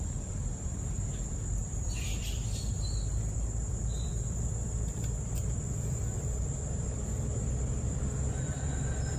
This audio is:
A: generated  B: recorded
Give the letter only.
A